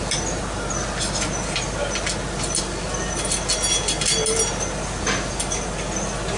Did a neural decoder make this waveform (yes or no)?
no